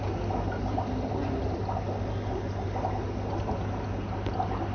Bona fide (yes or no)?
yes